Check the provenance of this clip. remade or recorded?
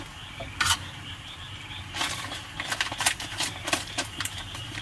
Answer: remade